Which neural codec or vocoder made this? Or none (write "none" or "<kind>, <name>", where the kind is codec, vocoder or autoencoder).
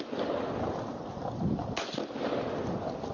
none